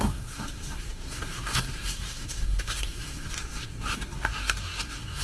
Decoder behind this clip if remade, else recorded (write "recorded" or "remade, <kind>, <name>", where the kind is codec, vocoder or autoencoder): remade, codec, SNAC